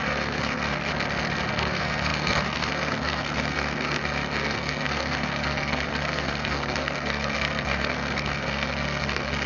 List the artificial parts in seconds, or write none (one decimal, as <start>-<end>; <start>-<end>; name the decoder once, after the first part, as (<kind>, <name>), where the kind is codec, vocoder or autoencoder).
0.0-0.9 (codec, SNAC); 1.5-9.5